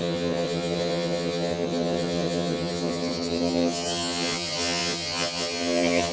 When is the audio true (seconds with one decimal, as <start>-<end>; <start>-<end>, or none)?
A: none